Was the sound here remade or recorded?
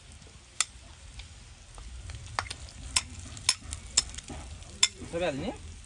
recorded